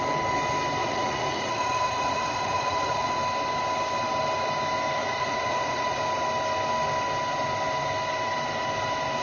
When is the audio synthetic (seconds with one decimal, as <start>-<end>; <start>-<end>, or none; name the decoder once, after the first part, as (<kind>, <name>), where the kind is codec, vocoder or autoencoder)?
0.8-3.1 (vocoder, Vocos); 5.0-6.0